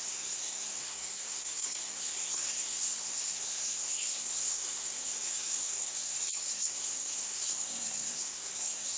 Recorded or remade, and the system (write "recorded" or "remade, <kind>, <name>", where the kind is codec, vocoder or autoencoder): remade, codec, SNAC